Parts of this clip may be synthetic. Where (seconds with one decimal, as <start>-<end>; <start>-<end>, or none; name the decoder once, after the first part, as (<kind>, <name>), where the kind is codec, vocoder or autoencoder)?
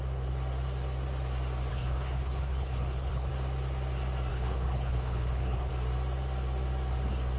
1.7-3.3 (codec, HILCodec); 4.3-5.7